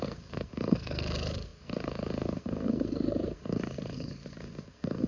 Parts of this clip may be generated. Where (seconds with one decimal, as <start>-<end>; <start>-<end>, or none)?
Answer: 0.0-5.1

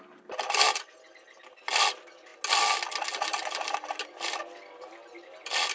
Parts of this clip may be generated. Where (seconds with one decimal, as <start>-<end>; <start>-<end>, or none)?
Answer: none

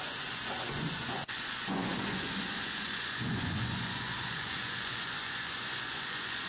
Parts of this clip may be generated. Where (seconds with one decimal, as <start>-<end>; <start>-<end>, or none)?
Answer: 0.0-6.5

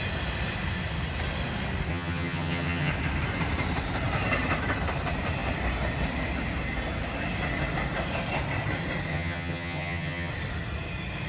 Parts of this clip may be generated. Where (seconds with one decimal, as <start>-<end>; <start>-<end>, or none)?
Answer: 1.9-2.9; 9.1-10.3

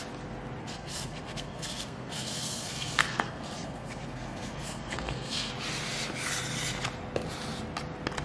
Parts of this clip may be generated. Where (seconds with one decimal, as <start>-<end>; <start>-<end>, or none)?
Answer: 0.6-5.5

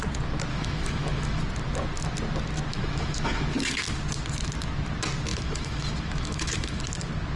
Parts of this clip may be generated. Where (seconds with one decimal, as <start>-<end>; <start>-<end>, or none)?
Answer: 0.5-1.4; 2.7-3.8; 5.3-6.8

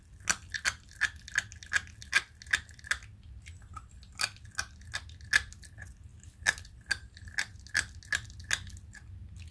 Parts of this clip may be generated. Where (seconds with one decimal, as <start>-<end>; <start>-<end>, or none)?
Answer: none

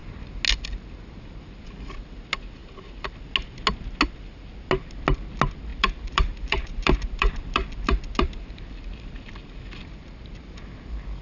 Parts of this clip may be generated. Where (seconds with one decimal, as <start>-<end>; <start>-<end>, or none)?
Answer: 5.7-9.4